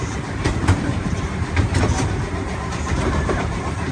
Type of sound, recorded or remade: remade